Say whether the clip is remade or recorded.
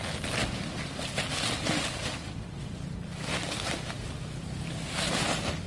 recorded